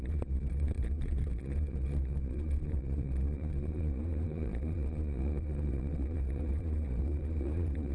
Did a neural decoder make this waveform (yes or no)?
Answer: yes